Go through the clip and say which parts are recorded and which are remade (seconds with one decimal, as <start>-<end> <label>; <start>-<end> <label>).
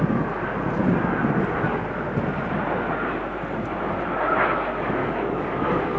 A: 0.0-5.0 recorded; 5.0-6.0 remade